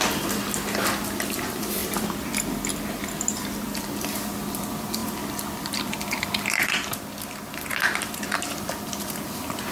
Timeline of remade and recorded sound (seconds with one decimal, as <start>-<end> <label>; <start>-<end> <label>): 0.0-1.8 recorded; 1.8-3.5 remade; 3.5-8.5 recorded; 8.5-9.7 remade